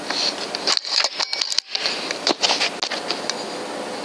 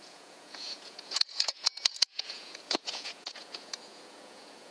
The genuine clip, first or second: first